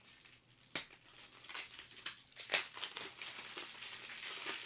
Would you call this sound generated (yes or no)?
no